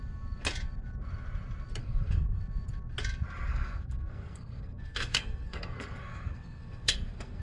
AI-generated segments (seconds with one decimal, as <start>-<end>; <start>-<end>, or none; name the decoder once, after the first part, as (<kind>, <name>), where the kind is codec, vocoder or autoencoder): 1.8-2.4 (codec, SNAC); 3.5-7.4